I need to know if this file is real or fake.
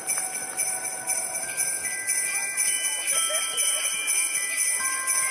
real